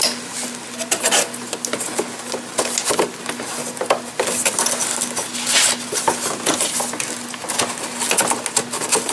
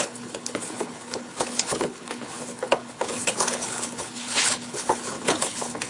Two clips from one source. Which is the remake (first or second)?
second